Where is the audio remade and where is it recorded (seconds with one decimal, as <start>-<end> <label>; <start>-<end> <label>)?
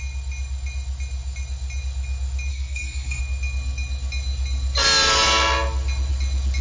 0.0-2.5 recorded; 2.5-3.2 remade; 3.2-6.6 recorded